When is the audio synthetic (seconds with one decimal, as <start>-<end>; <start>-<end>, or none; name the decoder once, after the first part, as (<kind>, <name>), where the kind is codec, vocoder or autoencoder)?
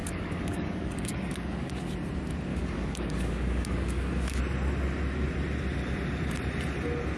0.0-1.7 (codec, DAC); 2.5-4.4